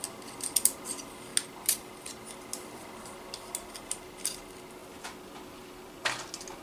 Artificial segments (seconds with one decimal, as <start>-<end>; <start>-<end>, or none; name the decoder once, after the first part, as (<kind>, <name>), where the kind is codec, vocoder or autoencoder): none